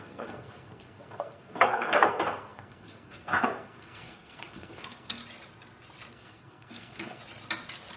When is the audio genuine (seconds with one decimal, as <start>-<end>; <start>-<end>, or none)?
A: 5.2-6.1; 7.2-8.0